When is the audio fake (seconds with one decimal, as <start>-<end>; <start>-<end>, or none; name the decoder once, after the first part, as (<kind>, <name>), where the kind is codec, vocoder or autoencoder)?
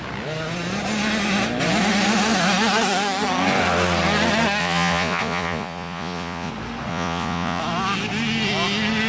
4.6-6.5 (vocoder, Vocos); 6.9-7.6